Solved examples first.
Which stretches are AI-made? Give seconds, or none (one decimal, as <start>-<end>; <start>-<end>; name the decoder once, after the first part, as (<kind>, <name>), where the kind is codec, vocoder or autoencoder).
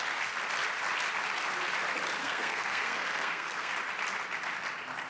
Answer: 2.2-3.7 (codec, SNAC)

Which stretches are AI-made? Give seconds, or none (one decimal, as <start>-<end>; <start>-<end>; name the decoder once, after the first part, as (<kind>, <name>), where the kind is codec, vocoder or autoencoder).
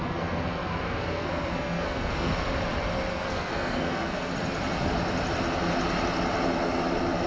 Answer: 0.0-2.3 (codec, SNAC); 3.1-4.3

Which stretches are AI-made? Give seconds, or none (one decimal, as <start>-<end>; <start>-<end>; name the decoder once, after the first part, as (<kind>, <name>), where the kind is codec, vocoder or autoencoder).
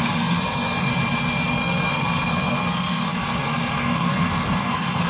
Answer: 0.0-0.9 (codec, SNAC); 1.5-5.1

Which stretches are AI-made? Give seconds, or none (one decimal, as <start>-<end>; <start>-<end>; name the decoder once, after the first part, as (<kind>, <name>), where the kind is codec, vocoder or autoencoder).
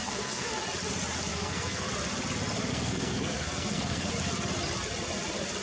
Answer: 0.0-0.5 (codec, SNAC); 1.3-1.9; 2.7-4.1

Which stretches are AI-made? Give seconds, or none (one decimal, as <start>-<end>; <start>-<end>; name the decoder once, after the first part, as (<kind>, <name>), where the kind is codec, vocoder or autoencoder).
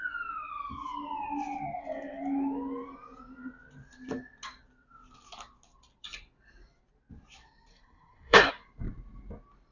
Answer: 7.7-8.5 (codec, SNAC)